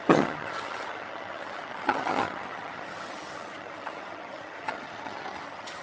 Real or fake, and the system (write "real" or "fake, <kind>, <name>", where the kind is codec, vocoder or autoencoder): fake, vocoder, HiFi-GAN